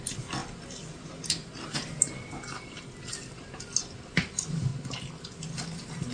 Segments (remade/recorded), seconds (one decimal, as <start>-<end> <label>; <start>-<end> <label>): 0.0-6.1 recorded

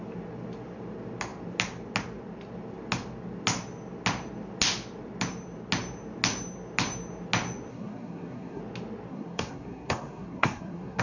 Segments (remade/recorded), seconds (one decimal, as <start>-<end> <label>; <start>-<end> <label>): 0.0-7.7 recorded; 7.7-8.6 remade; 8.6-9.1 recorded; 9.1-11.0 remade

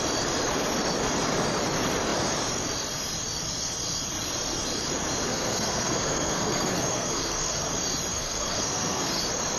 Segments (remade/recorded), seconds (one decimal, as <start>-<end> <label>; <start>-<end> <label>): 0.0-5.3 recorded; 5.3-7.7 remade; 7.7-8.1 recorded; 8.1-9.2 remade; 9.2-9.6 recorded

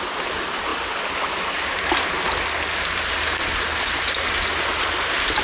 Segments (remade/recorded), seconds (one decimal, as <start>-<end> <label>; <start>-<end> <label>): 0.0-5.4 recorded

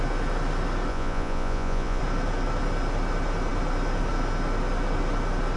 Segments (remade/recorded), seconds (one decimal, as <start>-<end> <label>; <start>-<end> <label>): 0.0-0.9 recorded; 0.9-2.0 remade; 2.0-5.6 recorded